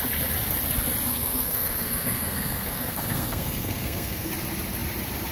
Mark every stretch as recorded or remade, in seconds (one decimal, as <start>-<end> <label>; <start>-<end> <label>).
0.0-1.1 recorded; 1.1-4.3 remade; 4.3-5.3 recorded